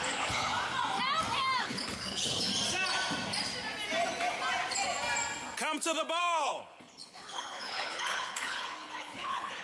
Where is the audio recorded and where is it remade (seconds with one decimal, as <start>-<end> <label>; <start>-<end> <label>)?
0.0-0.5 remade; 0.5-1.6 recorded; 1.6-2.5 remade; 2.5-6.2 recorded; 6.2-9.6 remade